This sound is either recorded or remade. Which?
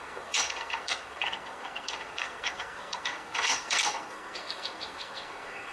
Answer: remade